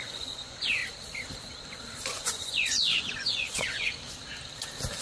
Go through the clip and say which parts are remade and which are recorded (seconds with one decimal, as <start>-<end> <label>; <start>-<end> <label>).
0.0-0.8 remade; 0.8-2.0 recorded; 2.0-3.9 remade; 3.9-5.0 recorded